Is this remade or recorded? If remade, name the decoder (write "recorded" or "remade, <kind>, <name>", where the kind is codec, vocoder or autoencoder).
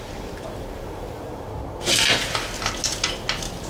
recorded